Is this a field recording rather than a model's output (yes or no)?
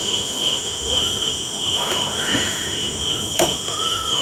no